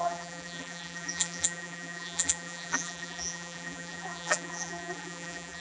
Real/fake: fake